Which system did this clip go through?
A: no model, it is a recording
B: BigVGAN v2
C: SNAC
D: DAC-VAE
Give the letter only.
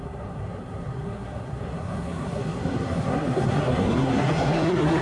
C